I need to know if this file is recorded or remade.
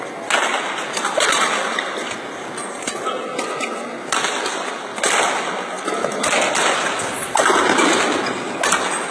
recorded